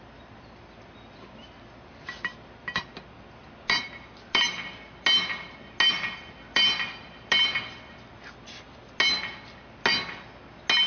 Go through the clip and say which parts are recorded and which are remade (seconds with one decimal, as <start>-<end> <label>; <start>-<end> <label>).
0.0-10.9 recorded